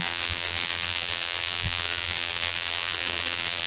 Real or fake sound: fake